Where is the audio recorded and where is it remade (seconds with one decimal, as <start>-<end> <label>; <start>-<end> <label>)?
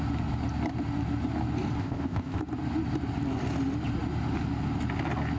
0.0-1.8 recorded; 1.8-2.4 remade; 2.4-5.4 recorded